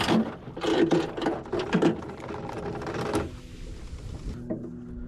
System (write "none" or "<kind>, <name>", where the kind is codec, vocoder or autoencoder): none